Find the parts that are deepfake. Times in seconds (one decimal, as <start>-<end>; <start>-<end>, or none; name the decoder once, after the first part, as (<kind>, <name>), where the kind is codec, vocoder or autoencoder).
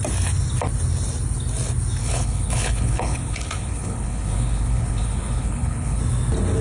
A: 2.0-6.0 (codec, HILCodec)